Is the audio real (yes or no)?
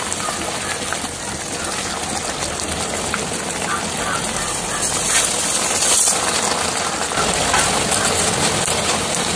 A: yes